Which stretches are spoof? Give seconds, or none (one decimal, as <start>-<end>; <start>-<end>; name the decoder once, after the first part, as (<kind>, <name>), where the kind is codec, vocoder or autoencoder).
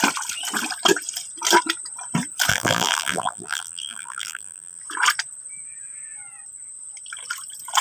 2.5-4.8 (vocoder, BigVGAN v2)